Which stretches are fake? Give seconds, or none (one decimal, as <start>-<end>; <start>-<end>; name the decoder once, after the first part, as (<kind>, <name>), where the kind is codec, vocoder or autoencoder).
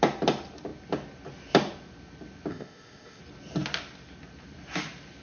2.5-3.2 (codec, ZipCodec)